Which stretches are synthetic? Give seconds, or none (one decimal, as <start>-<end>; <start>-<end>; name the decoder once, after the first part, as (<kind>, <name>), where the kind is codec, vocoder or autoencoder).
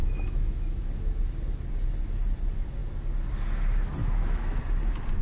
0.0-0.8 (autoencoder, DAC-VAE); 4.0-4.6